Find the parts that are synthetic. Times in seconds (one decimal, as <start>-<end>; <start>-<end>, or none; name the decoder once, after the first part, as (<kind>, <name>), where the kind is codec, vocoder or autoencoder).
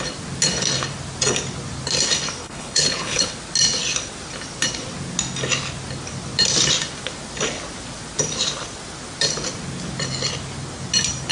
2.4-3.3 (codec, HILCodec)